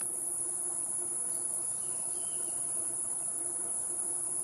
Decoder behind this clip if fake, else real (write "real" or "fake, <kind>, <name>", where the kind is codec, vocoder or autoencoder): fake, vocoder, BigVGAN v2